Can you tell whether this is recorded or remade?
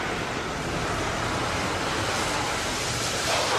remade